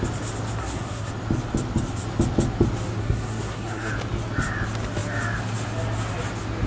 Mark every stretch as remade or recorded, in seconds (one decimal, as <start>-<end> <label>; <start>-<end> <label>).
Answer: 0.0-0.6 recorded; 0.6-1.1 remade; 1.1-3.0 recorded; 3.0-3.9 remade; 3.9-6.7 recorded